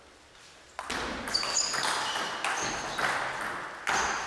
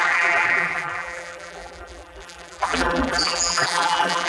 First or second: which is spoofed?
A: second